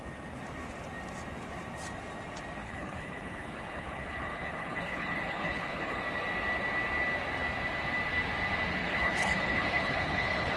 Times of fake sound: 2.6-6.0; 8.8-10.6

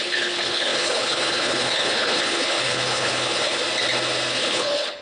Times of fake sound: 0.0-3.6; 4.3-5.0

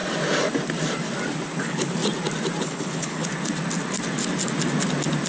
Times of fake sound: 1.6-2.0; 2.6-3.3

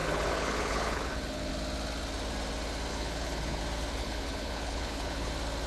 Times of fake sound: 0.0-1.5; 2.9-3.6; 4.0-5.3

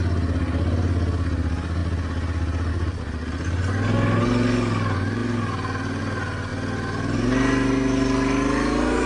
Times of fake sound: none

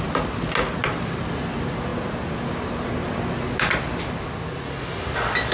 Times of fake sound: none